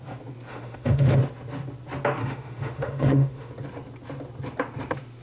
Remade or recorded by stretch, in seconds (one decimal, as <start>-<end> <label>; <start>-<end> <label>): 0.0-0.5 recorded; 0.5-1.2 remade; 1.2-2.2 recorded; 2.2-3.5 remade; 3.5-5.2 recorded